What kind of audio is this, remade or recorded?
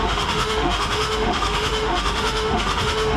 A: remade